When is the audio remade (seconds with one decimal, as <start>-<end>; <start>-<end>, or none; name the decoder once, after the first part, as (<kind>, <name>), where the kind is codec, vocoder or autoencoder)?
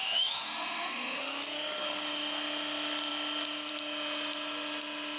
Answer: 0.0-1.2 (autoencoder, DAC-VAE)